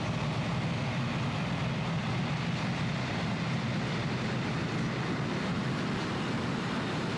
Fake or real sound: real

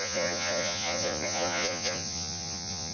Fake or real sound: fake